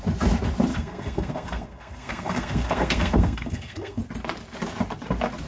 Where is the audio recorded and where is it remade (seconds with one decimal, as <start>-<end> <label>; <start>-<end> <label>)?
0.0-0.7 recorded; 0.7-4.0 remade; 4.0-5.5 recorded